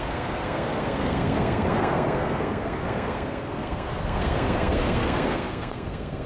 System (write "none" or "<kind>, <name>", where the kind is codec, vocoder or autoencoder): codec, SNAC